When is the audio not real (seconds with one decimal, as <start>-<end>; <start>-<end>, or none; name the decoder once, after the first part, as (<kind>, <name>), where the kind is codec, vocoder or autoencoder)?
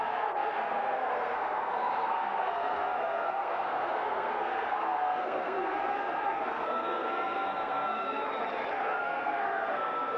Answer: 0.0-8.2 (codec, SNAC); 8.7-10.2